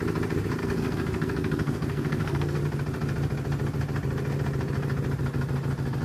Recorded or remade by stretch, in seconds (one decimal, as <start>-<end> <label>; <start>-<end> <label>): 0.0-0.6 recorded; 0.6-2.6 remade; 2.6-6.0 recorded